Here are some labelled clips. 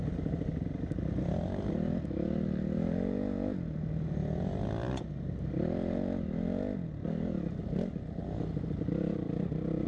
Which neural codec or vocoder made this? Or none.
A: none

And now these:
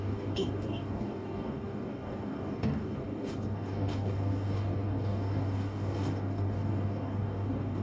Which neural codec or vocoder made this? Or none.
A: codec, DAC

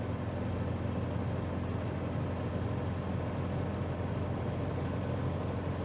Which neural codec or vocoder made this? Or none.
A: none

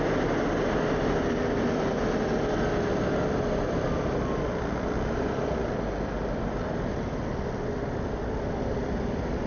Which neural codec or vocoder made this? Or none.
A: none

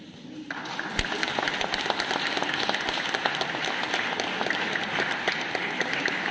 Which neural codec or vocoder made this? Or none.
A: none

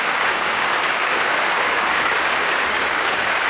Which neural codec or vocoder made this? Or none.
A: codec, DAC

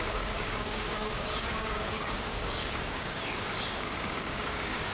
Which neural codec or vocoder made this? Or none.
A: codec, DAC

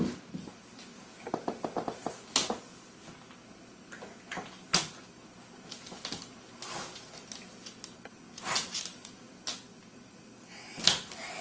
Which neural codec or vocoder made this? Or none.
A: none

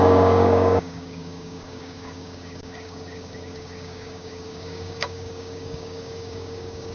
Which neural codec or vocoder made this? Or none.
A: codec, DAC